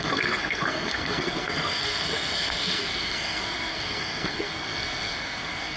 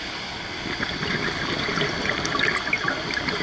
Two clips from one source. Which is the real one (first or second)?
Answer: second